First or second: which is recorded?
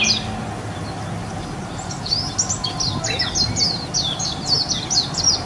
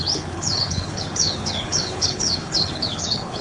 first